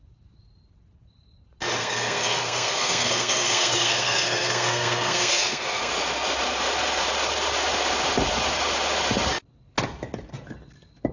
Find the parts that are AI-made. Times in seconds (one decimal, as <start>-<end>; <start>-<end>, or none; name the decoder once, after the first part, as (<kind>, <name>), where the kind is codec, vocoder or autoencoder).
1.8-5.9 (codec, SNAC)